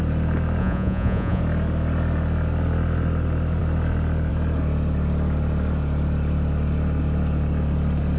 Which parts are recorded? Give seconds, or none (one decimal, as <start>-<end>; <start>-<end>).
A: 0.0-0.6; 1.4-8.2